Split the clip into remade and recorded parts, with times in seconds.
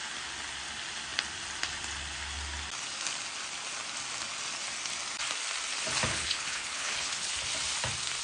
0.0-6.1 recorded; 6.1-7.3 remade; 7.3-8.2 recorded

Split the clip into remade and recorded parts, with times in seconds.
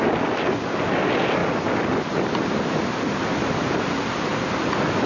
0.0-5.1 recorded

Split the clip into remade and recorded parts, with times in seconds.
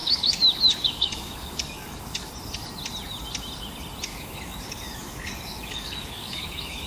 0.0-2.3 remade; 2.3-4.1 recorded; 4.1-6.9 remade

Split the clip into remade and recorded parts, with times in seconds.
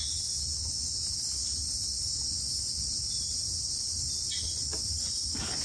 0.0-5.6 recorded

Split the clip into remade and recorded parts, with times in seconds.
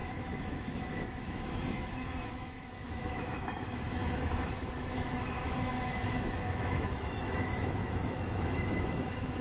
0.0-9.4 remade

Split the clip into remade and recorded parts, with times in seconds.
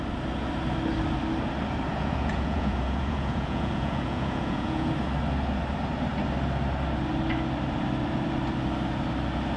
0.0-1.9 recorded; 1.9-4.9 remade; 4.9-9.6 recorded